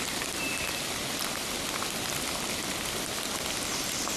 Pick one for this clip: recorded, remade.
recorded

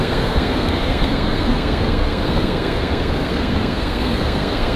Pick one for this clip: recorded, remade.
remade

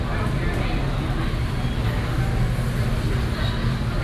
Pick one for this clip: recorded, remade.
recorded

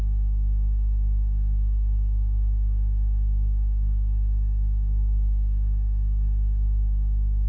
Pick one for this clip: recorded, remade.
remade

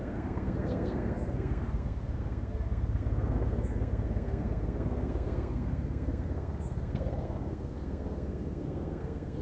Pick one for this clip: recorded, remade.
remade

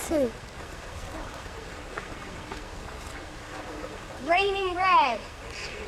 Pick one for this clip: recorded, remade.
remade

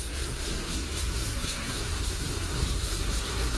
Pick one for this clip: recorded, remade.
remade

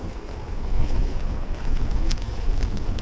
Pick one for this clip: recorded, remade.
remade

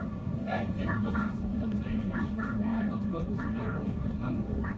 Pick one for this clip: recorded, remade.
remade